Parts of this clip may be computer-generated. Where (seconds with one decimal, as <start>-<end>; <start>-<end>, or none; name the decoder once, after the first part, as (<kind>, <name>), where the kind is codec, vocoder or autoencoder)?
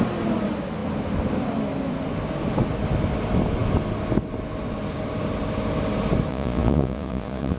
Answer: 6.3-7.6 (vocoder, Vocos)